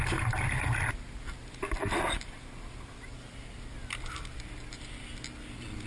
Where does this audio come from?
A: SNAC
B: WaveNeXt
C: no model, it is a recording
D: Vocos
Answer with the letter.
C